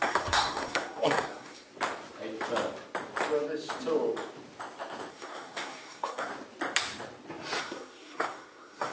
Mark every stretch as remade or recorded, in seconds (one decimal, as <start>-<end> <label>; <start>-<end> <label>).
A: 0.0-1.7 remade; 1.7-5.1 recorded; 5.1-6.3 remade; 6.3-7.6 recorded; 7.6-8.9 remade